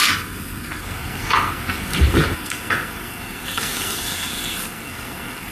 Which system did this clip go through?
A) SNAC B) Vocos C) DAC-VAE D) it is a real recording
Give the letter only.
A